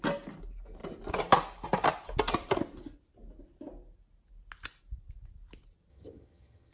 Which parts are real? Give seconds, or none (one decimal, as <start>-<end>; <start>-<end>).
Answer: 0.0-5.9